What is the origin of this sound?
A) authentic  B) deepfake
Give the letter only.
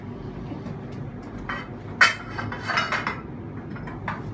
A